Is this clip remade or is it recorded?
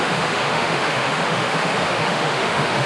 remade